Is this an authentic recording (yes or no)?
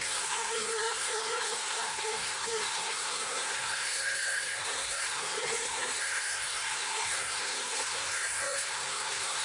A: no